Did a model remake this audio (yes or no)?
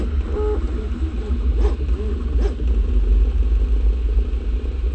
no